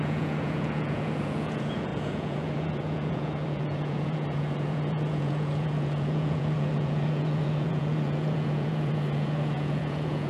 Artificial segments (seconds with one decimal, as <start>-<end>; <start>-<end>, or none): 0.0-10.3